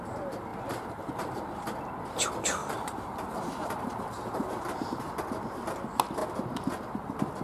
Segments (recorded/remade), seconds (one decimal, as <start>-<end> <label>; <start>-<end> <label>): 0.0-0.5 recorded; 0.5-1.6 remade; 1.6-2.6 recorded; 2.6-5.2 remade; 5.2-7.4 recorded